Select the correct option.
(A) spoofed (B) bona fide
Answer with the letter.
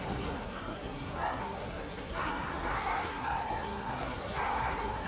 A